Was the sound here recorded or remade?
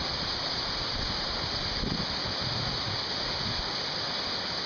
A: recorded